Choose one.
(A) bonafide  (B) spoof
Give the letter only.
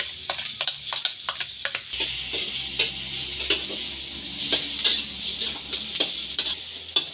A